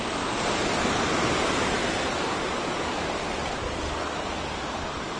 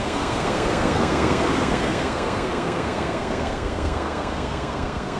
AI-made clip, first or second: second